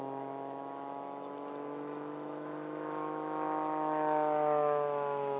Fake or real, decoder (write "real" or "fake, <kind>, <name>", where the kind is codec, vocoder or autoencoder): fake, autoencoder, DAC-VAE